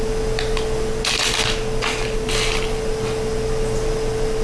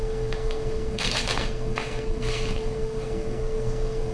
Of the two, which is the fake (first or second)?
second